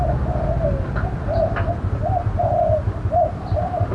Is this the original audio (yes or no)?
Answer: yes